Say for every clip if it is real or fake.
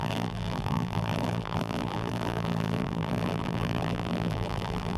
fake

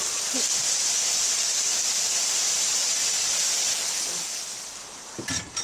fake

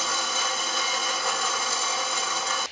real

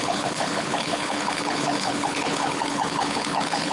fake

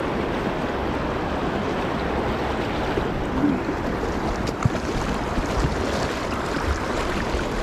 real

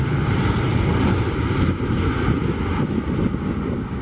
real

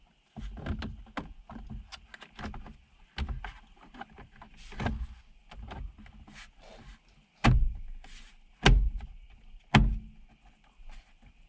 real